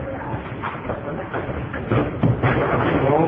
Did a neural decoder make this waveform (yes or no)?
no